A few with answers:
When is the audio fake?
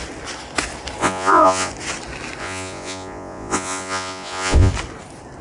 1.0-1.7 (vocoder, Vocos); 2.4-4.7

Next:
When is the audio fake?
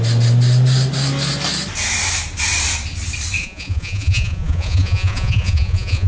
3.4-6.1 (vocoder, Vocos)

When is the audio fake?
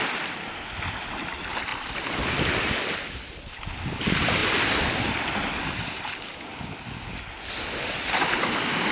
none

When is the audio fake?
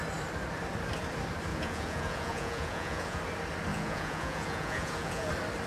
1.5-3.2 (vocoder, Vocos); 3.7-5.3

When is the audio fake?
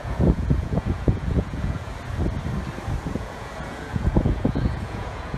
0.0-1.9 (vocoder, Vocos); 3.1-5.4